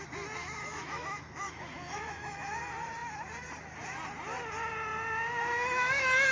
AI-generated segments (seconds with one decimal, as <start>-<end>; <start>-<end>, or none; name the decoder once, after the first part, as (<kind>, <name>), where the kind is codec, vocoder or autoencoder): 0.4-2.6 (autoencoder, DAC-VAE)